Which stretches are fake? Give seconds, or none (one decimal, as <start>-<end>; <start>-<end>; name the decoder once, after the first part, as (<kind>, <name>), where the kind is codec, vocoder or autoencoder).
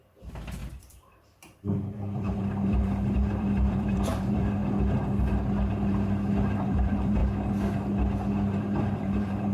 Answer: 0.0-4.6 (vocoder, BigVGAN v2); 5.7-7.2; 8.6-9.5